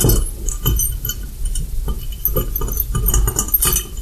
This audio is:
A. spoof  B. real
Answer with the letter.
B